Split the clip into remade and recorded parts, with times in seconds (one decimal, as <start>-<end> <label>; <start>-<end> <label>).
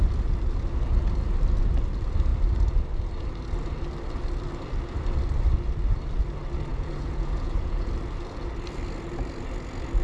0.0-6.7 recorded; 6.7-7.9 remade; 7.9-10.0 recorded